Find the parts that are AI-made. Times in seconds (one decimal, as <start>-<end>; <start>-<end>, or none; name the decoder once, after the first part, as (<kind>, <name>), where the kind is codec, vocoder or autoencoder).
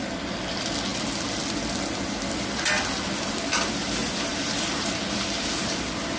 none